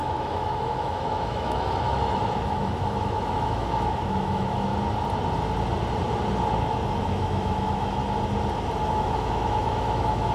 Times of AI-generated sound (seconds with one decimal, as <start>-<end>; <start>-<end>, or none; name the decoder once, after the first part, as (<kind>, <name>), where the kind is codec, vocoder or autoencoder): 0.0-4.7 (autoencoder, DAC-VAE); 7.0-8.0; 8.9-10.3